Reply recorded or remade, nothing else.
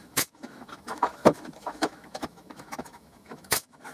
remade